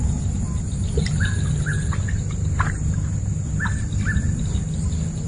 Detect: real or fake real